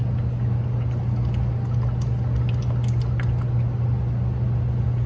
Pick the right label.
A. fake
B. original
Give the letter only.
B